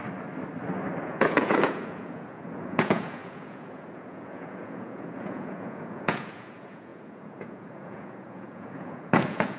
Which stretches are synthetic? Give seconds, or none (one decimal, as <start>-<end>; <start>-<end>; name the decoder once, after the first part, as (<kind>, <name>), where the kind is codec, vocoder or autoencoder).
1.0-9.6 (vocoder, Vocos)